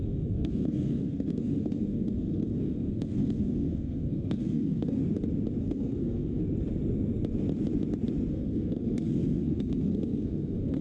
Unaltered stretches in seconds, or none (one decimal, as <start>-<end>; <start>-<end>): 5.0-5.6; 6.4-8.3